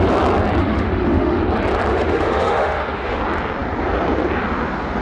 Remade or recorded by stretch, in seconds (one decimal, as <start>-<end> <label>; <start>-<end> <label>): 0.0-0.6 recorded; 0.6-1.4 remade; 1.4-1.9 recorded; 1.9-3.2 remade; 3.2-5.0 recorded